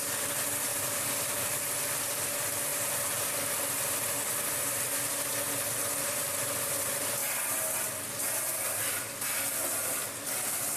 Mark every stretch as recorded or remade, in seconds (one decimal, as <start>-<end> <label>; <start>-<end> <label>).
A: 0.0-0.7 recorded; 0.7-1.6 remade; 1.6-2.7 recorded; 2.7-5.1 remade; 5.1-7.2 recorded; 7.2-7.9 remade; 7.9-10.8 recorded